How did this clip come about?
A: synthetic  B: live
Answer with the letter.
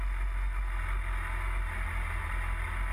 B